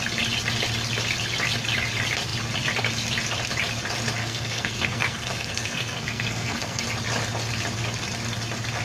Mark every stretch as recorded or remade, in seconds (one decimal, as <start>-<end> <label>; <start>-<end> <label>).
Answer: 0.0-4.2 recorded; 4.2-6.8 remade; 6.8-8.8 recorded